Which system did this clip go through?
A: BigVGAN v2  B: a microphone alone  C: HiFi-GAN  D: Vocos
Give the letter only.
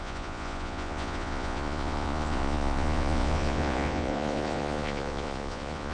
D